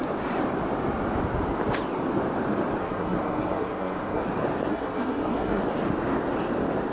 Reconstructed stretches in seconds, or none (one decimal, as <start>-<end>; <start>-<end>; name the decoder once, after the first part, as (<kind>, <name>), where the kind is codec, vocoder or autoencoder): 2.8-4.2 (codec, SNAC); 4.7-5.6